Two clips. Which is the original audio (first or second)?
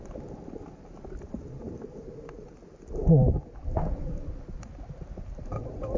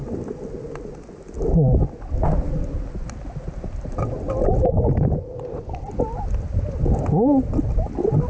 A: second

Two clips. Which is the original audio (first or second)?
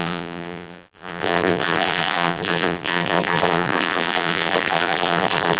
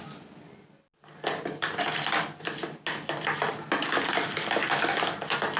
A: second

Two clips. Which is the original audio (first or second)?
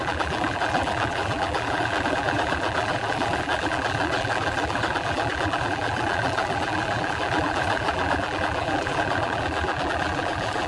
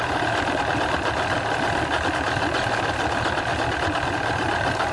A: second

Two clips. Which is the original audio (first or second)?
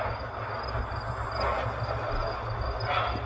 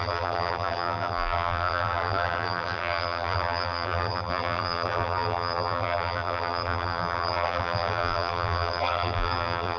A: first